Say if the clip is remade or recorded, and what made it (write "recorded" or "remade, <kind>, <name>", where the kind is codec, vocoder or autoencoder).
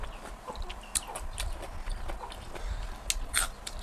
recorded